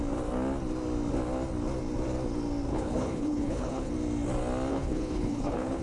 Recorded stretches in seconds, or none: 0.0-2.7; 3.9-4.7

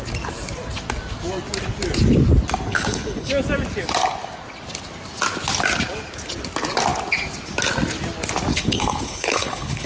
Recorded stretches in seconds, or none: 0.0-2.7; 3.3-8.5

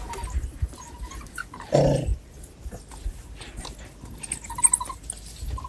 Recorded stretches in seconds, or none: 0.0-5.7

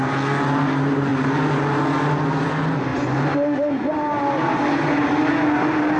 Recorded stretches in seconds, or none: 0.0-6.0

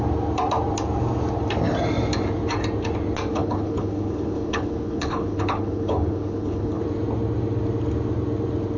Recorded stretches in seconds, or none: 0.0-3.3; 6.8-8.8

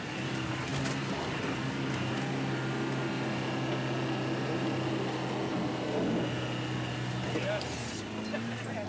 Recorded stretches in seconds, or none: 0.0-8.9

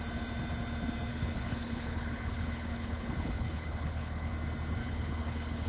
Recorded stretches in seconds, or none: 0.0-1.1; 4.3-4.8

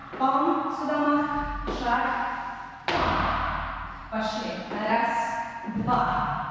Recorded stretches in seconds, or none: 0.0-6.5